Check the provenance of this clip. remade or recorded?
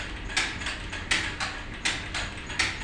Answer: recorded